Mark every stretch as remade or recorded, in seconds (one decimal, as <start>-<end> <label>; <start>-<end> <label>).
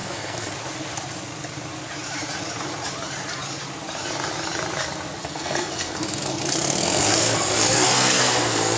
0.0-0.5 remade; 0.5-5.2 recorded; 5.2-8.8 remade